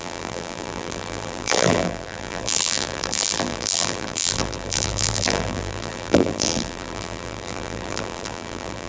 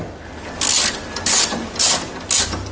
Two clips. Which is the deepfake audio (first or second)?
first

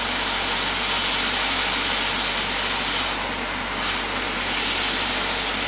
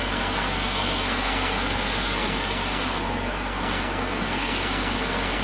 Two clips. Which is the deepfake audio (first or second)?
second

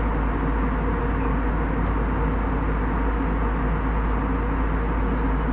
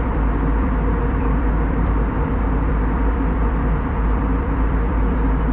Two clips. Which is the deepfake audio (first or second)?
second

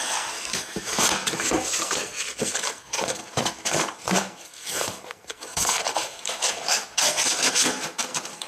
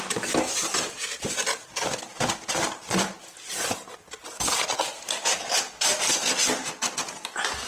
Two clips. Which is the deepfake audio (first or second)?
first